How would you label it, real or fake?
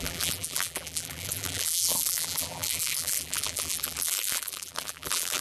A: fake